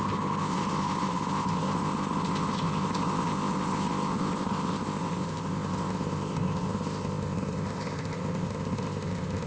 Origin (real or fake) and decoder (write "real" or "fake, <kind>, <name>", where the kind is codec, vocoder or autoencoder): fake, codec, ZipCodec